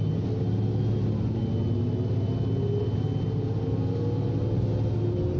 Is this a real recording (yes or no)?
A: yes